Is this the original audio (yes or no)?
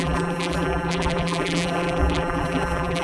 no